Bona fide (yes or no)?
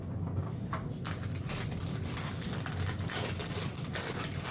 yes